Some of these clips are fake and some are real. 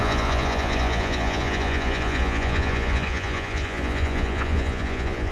fake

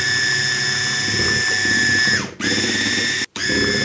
real